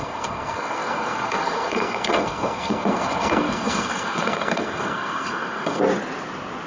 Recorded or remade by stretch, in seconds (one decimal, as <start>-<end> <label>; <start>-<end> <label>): 0.0-5.8 remade; 5.8-6.7 recorded